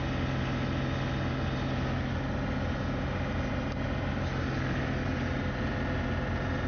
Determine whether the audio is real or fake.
real